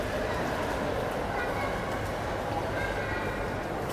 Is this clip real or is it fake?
real